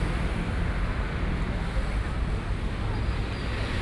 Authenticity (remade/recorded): recorded